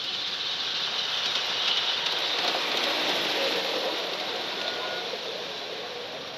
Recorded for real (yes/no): yes